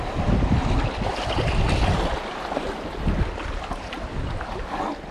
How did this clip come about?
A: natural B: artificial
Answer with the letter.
A